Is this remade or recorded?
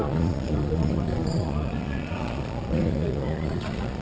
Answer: remade